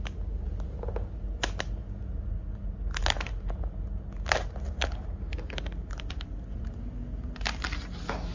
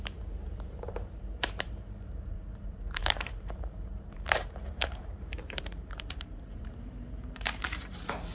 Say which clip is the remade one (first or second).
second